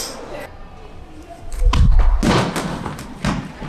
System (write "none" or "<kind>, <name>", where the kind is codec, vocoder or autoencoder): none